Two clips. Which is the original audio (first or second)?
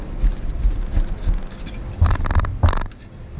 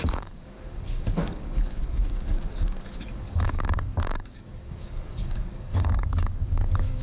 first